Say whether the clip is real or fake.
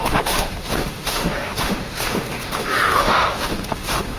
fake